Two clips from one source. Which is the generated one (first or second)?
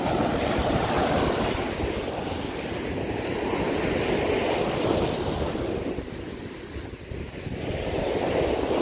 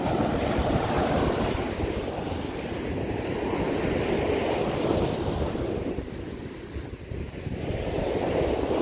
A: second